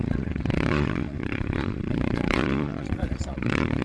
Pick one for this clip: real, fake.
fake